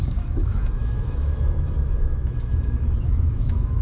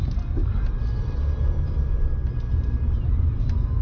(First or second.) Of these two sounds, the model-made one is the first